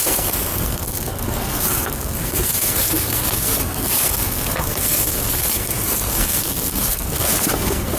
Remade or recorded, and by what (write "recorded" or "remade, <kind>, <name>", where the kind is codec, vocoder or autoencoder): remade, codec, SNAC